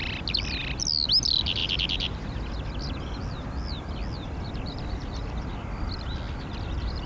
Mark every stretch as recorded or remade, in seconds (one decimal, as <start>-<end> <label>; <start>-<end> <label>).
0.0-7.1 recorded